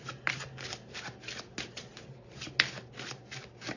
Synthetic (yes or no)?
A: no